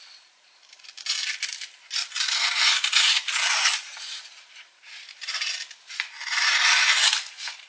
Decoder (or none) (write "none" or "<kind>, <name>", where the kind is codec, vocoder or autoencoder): vocoder, BigVGAN v2